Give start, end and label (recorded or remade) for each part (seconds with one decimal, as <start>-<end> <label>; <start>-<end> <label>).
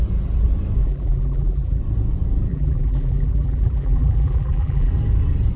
0.0-0.8 recorded; 0.8-1.8 remade; 1.8-2.5 recorded; 2.5-4.9 remade; 4.9-5.6 recorded